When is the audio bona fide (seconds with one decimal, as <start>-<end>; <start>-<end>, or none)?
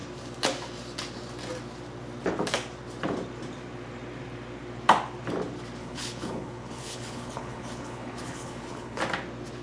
0.0-5.8; 9.0-9.6